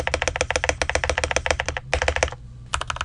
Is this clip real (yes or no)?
yes